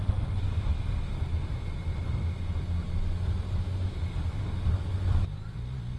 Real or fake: real